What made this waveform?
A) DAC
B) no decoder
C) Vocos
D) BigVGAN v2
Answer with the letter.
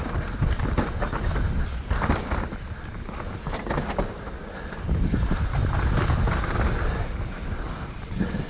B